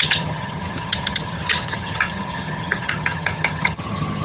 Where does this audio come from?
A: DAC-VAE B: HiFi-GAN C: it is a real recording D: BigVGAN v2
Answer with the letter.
B